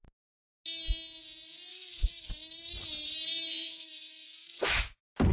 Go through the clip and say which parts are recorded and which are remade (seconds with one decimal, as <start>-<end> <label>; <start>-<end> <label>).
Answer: 0.0-1.7 recorded; 1.7-2.3 remade; 2.3-3.5 recorded; 3.5-4.8 remade; 4.8-5.3 recorded